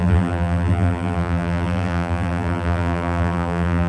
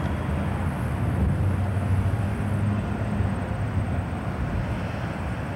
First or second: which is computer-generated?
first